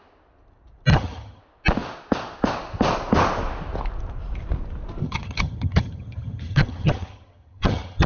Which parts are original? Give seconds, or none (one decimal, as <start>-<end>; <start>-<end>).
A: 0.0-0.9; 1.4-5.0